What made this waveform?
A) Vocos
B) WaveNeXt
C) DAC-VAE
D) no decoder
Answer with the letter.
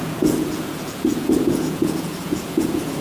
A